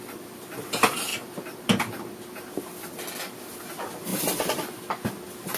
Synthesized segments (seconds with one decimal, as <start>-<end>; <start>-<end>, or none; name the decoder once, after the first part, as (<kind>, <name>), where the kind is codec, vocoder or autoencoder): 4.1-5.1 (vocoder, BigVGAN v2)